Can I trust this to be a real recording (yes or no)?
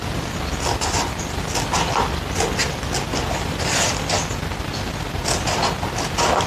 yes